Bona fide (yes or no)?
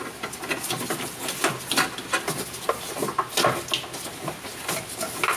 yes